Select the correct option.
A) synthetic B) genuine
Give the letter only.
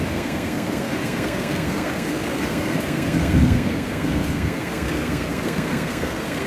A